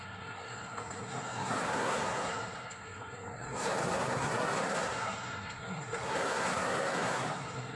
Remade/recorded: remade